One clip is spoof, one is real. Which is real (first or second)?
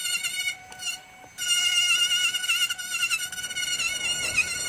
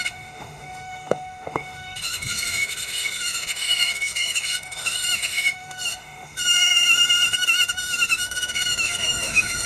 first